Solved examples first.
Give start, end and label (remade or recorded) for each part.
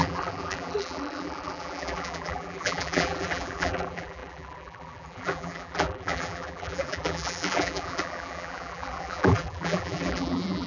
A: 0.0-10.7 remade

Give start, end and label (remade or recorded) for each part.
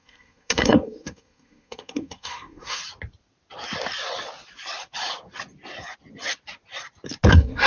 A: 0.0-2.8 remade; 2.8-7.3 recorded; 7.3-7.7 remade